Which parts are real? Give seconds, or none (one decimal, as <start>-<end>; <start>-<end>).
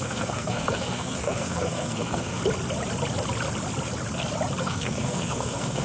2.4-4.6